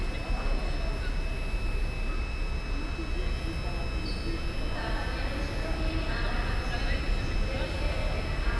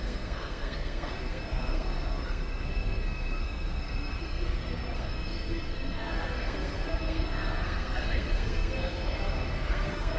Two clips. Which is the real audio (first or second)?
first